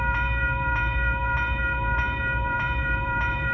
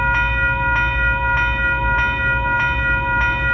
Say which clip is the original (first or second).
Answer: second